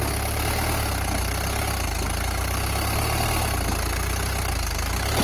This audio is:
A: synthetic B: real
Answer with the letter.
B